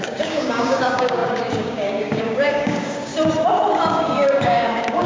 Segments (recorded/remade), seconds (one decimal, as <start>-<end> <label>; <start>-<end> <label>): 0.0-3.1 remade; 3.1-3.9 recorded; 3.9-5.1 remade